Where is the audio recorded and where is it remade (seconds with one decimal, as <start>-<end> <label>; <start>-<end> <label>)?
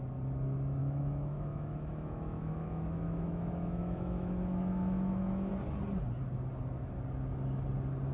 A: 0.0-0.8 recorded; 0.8-5.5 remade; 5.5-8.1 recorded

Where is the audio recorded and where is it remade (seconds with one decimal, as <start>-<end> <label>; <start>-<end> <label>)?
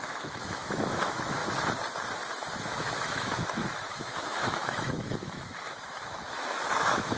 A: 0.0-1.4 remade; 1.4-2.6 recorded; 2.6-7.2 remade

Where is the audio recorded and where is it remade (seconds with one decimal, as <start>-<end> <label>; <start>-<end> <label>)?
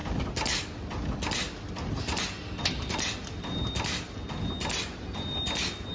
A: 0.0-5.9 recorded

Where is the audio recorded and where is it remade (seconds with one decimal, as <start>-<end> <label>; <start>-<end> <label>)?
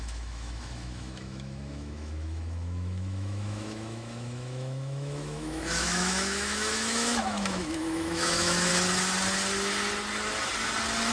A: 0.0-8.7 remade; 8.7-11.1 recorded